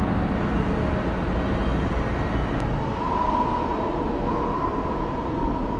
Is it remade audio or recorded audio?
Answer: recorded